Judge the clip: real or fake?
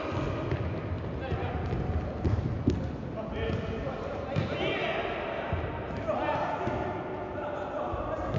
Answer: real